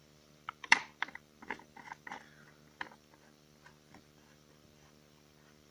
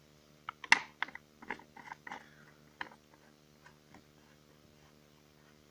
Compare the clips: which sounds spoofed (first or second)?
first